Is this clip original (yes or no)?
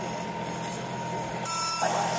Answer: yes